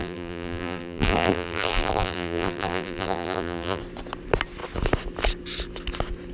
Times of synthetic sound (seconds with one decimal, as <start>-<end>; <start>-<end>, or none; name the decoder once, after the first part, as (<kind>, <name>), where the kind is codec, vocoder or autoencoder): 0.0-3.8 (vocoder, BigVGAN v2)